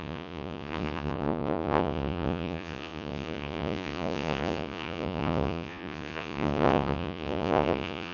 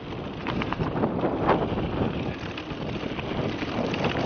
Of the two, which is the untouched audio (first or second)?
second